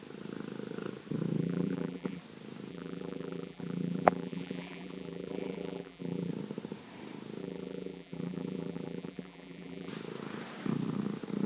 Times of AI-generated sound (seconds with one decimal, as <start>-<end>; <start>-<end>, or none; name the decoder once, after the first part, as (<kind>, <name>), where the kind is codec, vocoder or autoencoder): 1.4-2.2 (vocoder, BigVGAN v2); 2.7-6.3; 7.4-9.9